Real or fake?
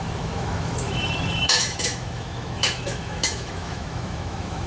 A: fake